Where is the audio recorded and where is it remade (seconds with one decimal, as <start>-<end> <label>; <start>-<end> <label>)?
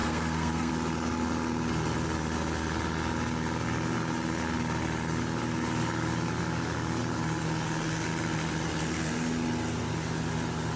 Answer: 0.0-0.7 remade; 0.7-10.8 recorded